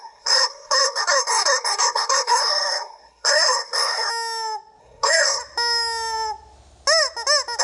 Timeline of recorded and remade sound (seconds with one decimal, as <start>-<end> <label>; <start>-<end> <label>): 0.0-4.1 remade; 4.1-4.8 recorded; 4.8-5.4 remade; 5.4-7.6 recorded